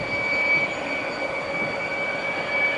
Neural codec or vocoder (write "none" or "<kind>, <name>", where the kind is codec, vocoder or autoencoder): none